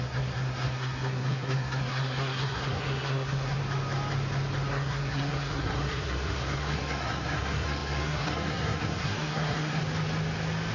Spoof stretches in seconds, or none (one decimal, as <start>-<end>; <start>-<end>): 0.0-3.6; 4.7-9.8